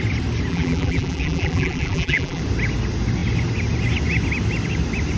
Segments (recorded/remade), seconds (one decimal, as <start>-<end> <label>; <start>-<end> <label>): 0.0-0.5 recorded; 0.5-2.4 remade; 2.4-5.2 recorded